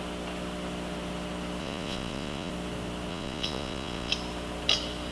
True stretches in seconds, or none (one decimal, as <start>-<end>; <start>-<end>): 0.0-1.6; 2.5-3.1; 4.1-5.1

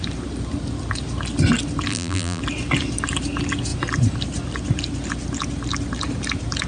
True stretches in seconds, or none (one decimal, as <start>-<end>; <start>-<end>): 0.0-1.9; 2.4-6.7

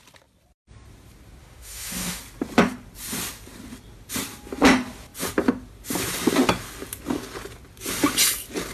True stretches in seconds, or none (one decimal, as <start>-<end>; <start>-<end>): 0.0-1.4; 2.2-8.7

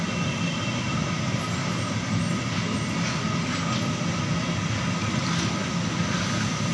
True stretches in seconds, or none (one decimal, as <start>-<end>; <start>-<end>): 0.0-6.7

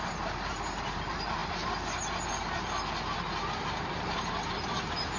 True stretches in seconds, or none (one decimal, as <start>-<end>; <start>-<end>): 1.4-4.5

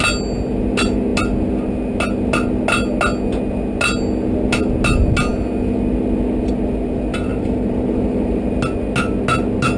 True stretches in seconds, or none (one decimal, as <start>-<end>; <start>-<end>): 0.0-7.3; 8.5-9.8

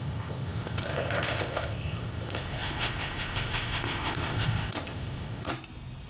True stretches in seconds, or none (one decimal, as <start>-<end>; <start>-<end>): 5.5-6.1

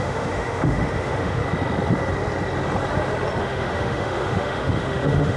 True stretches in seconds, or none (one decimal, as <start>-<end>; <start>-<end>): 1.4-3.4